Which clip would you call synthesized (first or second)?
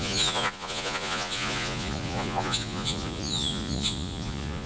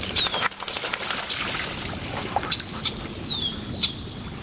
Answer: first